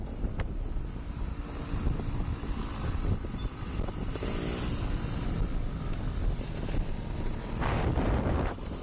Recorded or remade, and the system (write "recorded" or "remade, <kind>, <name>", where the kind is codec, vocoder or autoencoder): recorded